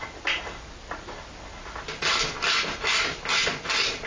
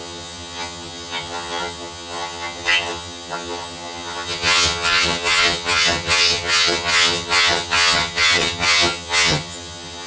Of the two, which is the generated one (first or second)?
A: second